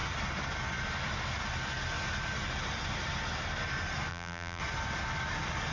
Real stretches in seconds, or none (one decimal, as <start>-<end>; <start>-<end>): 0.0-4.1; 4.6-5.7